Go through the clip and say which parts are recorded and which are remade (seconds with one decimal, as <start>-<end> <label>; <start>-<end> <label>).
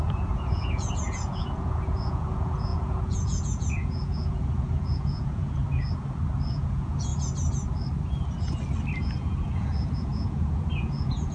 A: 0.0-5.6 remade; 5.6-6.5 recorded; 6.5-7.1 remade; 7.1-9.0 recorded; 9.0-11.3 remade